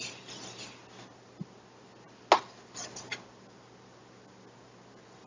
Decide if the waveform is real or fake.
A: real